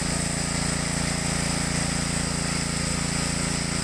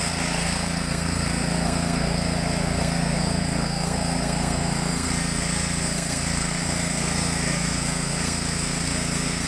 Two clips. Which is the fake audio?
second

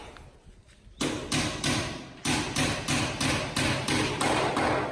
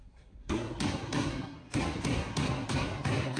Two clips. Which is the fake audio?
second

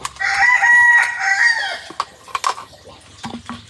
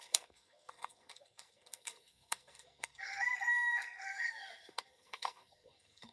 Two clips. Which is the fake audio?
second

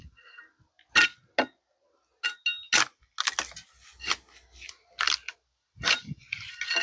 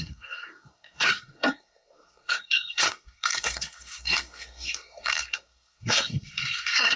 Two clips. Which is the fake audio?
second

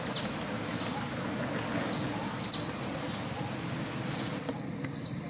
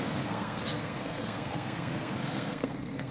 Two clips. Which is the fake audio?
second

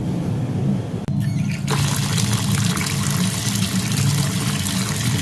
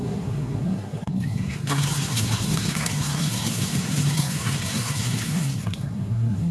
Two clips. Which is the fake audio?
second